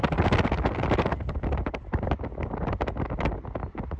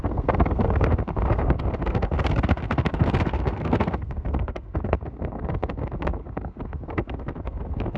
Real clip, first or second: first